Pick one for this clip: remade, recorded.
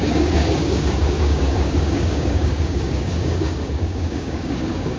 remade